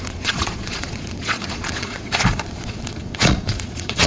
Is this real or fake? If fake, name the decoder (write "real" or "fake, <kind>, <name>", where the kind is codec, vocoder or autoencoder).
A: fake, vocoder, Vocos